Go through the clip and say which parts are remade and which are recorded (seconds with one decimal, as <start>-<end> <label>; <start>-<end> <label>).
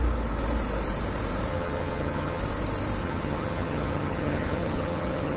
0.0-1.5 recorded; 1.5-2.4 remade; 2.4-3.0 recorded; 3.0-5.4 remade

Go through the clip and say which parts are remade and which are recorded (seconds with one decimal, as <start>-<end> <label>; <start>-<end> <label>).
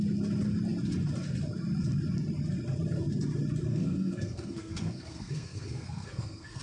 0.0-3.7 recorded; 3.7-6.6 remade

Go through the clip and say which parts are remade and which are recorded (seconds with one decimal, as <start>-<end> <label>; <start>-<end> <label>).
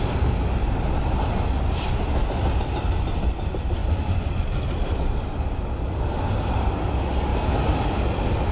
0.0-8.5 recorded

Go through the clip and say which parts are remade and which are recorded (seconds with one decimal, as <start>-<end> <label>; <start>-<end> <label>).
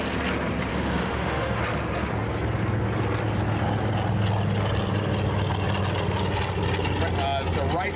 0.0-0.7 recorded; 0.7-1.6 remade; 1.6-8.0 recorded